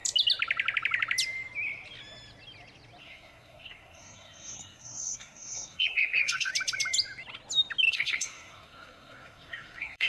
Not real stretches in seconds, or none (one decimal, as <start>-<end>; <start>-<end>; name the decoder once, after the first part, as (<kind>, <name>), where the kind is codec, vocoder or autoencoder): 3.0-6.5 (codec, SNAC); 7.9-10.1